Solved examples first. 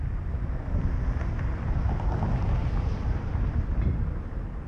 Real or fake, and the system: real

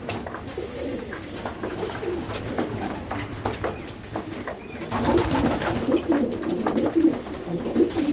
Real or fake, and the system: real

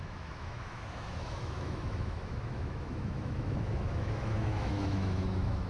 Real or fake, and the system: fake, autoencoder, DAC-VAE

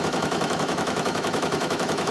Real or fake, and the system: fake, autoencoder, DAC-VAE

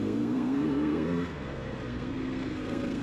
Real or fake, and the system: fake, codec, SNAC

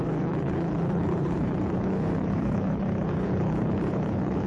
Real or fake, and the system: fake, codec, HILCodec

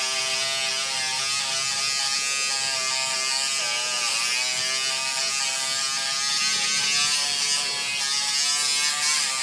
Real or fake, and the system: real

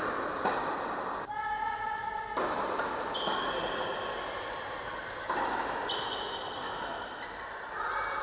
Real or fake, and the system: real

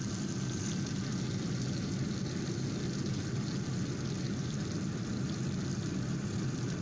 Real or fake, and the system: real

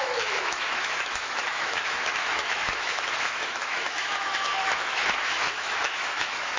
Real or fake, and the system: fake, autoencoder, DAC-VAE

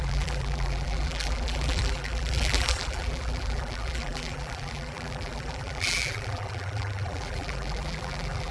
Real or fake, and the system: fake, vocoder, BigVGAN v2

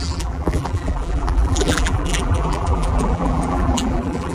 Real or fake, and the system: fake, vocoder, BigVGAN v2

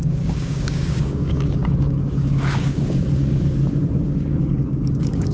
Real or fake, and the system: fake, codec, DAC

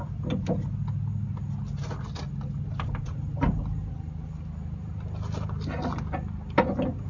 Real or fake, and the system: real